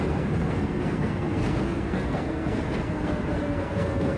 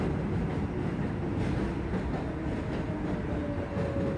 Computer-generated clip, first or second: first